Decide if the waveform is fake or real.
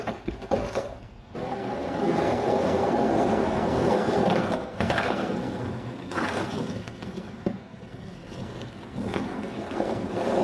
fake